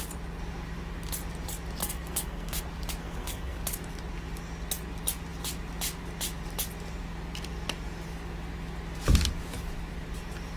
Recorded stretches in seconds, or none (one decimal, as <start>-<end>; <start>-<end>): 0.0-1.8; 2.6-3.0; 3.6-10.6